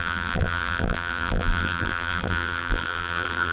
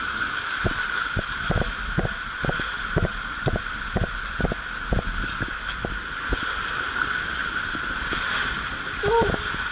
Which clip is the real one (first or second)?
second